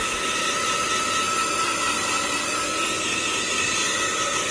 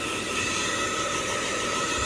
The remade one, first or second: second